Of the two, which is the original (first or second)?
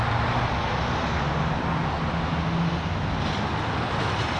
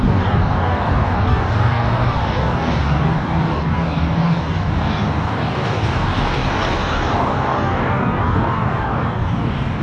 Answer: first